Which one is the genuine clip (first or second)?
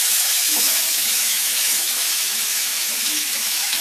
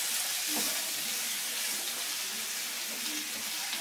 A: second